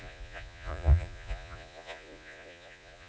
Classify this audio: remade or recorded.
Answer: remade